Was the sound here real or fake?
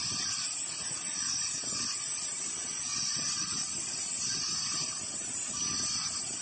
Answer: real